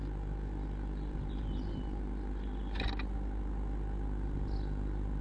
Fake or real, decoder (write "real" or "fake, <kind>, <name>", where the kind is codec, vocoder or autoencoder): real